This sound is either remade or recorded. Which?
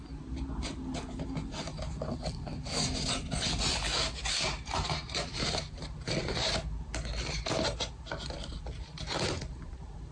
recorded